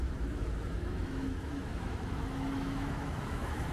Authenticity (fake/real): fake